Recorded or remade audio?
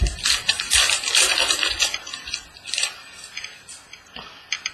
remade